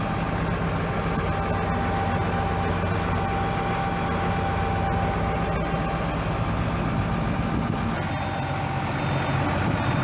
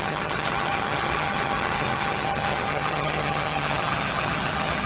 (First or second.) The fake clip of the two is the second